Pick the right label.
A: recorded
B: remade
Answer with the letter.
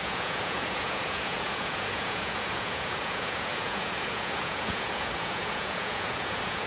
B